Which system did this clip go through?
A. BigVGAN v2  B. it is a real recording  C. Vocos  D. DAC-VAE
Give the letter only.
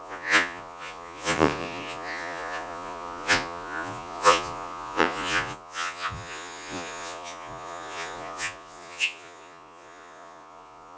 C